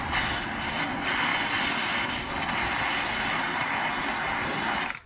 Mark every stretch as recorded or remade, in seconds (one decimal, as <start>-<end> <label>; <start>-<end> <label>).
0.0-5.1 recorded